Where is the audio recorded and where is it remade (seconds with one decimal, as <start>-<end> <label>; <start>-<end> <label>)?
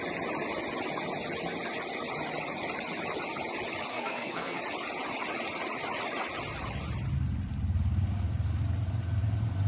0.0-3.9 recorded; 3.9-4.6 remade; 4.6-9.7 recorded